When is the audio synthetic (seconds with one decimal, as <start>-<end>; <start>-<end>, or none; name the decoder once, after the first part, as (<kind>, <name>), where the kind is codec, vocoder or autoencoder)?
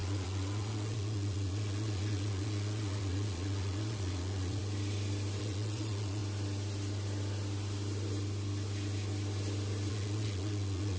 0.0-4.6 (vocoder, Vocos); 5.4-6.2; 9.9-11.0